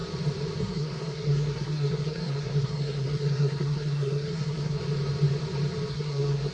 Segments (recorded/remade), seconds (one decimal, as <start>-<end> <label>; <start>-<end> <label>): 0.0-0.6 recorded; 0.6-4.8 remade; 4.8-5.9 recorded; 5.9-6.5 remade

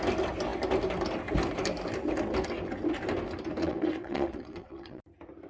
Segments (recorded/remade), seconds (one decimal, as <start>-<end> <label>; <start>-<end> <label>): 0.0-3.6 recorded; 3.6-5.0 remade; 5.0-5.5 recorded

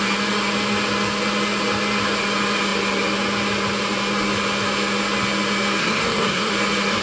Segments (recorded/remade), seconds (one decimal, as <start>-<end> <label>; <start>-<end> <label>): 0.0-5.8 recorded; 5.8-6.5 remade; 6.5-7.0 recorded

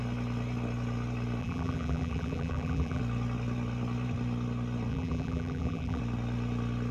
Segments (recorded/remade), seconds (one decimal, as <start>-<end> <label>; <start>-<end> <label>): 0.0-1.4 recorded; 1.4-3.0 remade; 3.0-4.9 recorded; 4.9-6.0 remade; 6.0-6.9 recorded

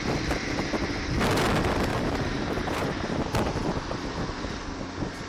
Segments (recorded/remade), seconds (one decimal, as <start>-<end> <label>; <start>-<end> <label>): 0.0-1.9 recorded; 1.9-3.3 remade; 3.3-5.3 recorded

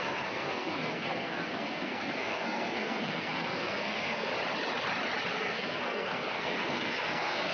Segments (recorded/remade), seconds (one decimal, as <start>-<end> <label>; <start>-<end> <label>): 0.0-4.3 remade; 4.3-5.3 recorded; 5.3-7.5 remade

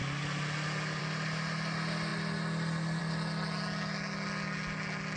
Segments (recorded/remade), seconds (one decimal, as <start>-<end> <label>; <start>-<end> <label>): 0.0-5.2 recorded

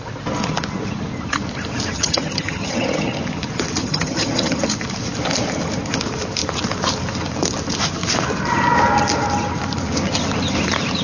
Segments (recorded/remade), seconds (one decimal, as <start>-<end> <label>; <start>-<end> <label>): 0.0-1.9 recorded; 1.9-3.2 remade; 3.2-3.8 recorded; 3.8-4.6 remade; 4.6-11.0 recorded